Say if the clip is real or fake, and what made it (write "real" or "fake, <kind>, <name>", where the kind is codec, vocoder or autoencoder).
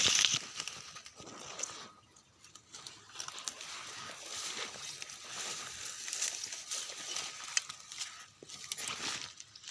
real